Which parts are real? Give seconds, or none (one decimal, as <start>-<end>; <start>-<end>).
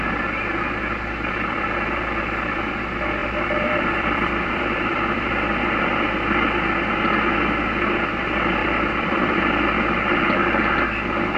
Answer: 0.0-3.2; 5.3-8.6; 9.4-11.4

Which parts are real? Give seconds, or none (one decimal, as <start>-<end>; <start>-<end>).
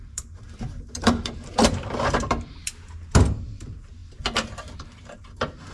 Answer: none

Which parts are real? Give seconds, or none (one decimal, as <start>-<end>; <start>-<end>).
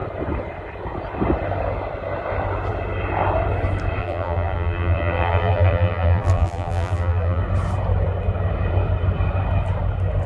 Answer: 0.0-4.0; 7.4-10.3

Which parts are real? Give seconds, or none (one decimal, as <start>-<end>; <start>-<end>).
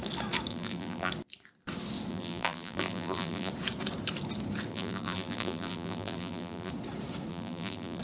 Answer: 0.0-0.5; 1.1-2.1; 3.5-4.7; 6.7-7.3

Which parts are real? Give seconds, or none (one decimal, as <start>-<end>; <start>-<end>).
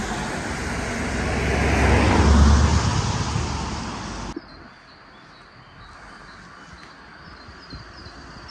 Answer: 0.0-8.5